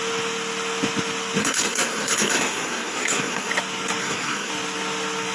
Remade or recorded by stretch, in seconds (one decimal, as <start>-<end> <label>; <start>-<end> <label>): 0.0-1.4 recorded; 1.4-3.5 remade; 3.5-4.0 recorded; 4.0-4.5 remade; 4.5-5.3 recorded